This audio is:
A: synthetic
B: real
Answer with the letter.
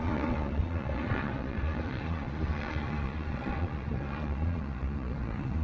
A